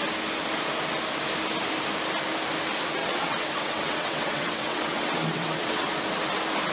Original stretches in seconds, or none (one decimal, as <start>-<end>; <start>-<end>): 0.0-3.0; 5.9-6.7